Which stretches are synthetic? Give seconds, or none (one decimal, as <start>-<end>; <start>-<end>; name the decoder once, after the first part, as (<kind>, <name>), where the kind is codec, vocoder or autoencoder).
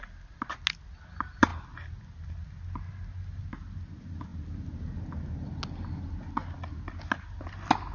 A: none